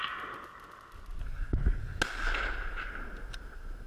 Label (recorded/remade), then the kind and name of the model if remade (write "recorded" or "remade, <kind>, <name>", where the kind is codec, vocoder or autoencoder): recorded